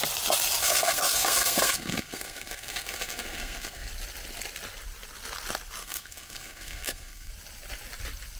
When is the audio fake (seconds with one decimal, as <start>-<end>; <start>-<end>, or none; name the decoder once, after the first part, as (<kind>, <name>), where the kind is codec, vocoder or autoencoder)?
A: 0.6-3.9 (codec, SNAC); 5.8-7.3